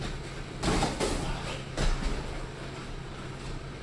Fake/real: real